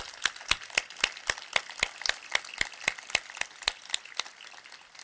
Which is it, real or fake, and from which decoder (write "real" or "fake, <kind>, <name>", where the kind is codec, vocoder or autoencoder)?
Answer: real